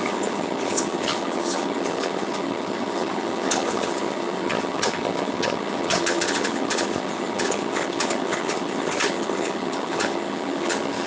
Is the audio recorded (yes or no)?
no